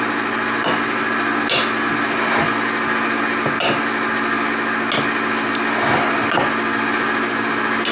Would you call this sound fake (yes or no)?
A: no